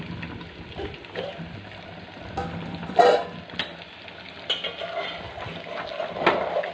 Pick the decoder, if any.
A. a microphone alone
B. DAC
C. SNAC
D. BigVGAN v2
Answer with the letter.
A